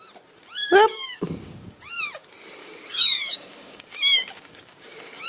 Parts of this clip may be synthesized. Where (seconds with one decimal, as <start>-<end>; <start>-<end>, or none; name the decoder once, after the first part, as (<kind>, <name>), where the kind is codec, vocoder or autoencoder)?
0.9-2.1 (codec, DAC); 2.6-5.3